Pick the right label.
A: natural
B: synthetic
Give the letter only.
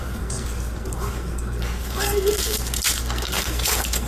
B